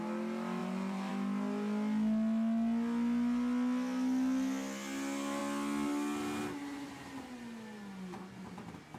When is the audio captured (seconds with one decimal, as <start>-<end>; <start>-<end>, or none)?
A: 0.0-0.6; 1.1-9.0